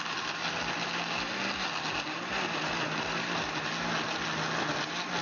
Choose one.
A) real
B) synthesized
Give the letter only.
A